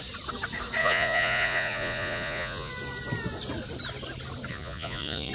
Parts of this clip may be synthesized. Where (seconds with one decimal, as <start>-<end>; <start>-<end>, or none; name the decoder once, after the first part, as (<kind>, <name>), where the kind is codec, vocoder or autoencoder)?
0.8-2.7 (vocoder, Vocos); 4.5-5.3